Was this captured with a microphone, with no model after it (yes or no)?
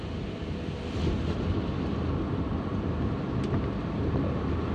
yes